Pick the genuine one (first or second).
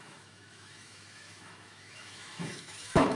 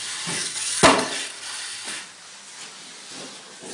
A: second